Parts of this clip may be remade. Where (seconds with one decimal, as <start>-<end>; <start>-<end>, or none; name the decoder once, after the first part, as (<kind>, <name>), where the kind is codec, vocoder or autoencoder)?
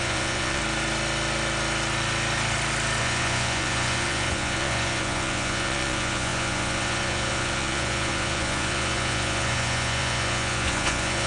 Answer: 0.0-0.6 (vocoder, Vocos); 3.0-11.3